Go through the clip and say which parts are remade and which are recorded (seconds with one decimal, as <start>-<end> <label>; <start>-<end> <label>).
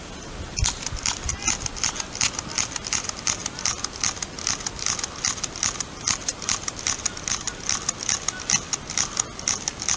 0.0-10.0 recorded